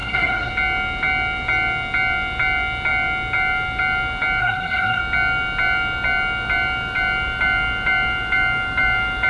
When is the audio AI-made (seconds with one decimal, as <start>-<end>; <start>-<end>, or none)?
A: 0.0-0.5; 4.4-5.0